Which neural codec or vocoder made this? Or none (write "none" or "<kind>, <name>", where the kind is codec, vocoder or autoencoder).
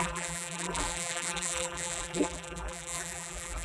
vocoder, BigVGAN v2